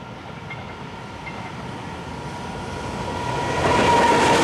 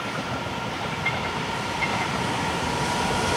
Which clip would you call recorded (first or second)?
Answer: first